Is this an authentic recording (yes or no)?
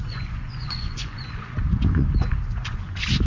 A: no